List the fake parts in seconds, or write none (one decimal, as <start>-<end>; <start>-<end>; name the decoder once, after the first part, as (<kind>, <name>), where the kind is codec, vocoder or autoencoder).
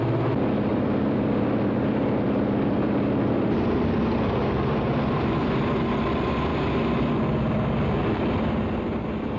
0.7-5.6 (vocoder, BigVGAN v2)